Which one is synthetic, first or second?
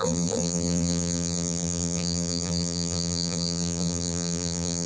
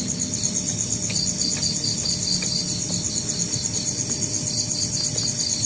first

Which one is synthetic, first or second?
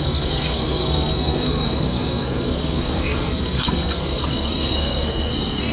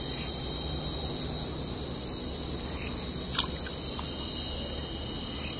first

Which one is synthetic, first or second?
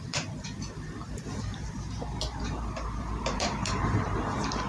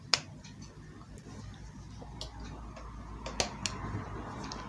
first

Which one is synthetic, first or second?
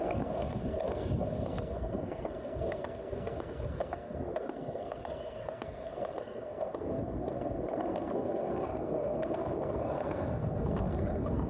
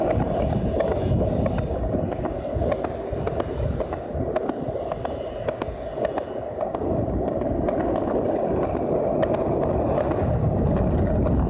first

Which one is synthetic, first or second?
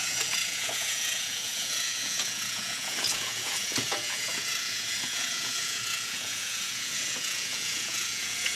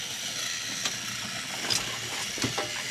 first